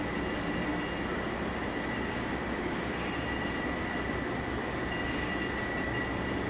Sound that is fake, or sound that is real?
real